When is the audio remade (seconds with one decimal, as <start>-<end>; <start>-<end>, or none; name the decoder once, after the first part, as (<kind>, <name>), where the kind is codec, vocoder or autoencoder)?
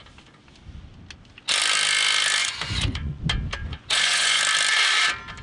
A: 2.4-3.2 (vocoder, Vocos); 3.6-4.4